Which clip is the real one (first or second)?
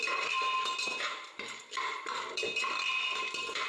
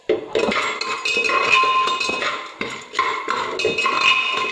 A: second